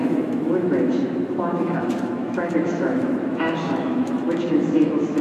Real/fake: fake